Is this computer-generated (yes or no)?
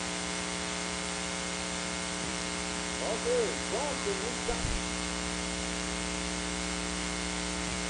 yes